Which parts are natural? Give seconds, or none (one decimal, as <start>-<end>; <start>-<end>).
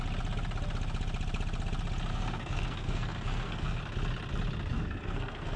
0.0-2.1; 3.8-4.7